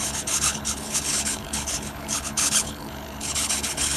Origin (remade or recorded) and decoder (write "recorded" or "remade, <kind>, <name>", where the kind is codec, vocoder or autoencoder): remade, codec, HILCodec